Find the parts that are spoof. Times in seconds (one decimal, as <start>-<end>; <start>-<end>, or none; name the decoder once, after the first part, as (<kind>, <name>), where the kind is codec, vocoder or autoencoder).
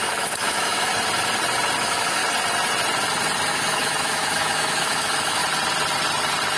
0.0-0.9 (autoencoder, DAC-VAE); 1.8-2.2; 3.5-5.4